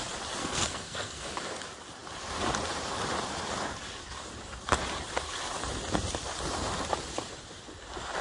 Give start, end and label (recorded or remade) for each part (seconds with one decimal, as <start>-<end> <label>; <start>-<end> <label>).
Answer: 0.0-0.4 recorded; 0.4-1.3 remade; 1.3-8.2 recorded